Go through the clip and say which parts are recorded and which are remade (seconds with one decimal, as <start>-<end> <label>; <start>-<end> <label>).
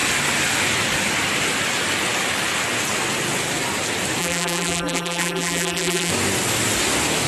0.0-4.2 recorded; 4.2-6.1 remade; 6.1-7.3 recorded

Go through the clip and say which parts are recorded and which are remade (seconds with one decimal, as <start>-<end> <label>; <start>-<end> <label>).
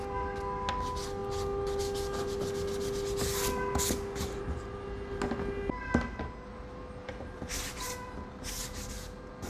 0.0-9.5 recorded